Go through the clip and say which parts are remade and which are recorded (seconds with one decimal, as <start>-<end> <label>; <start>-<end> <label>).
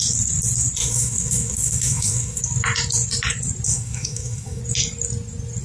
0.0-0.8 recorded; 0.8-2.4 remade; 2.4-3.7 recorded; 3.7-4.6 remade; 4.6-5.6 recorded